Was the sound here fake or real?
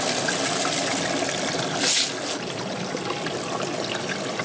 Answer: real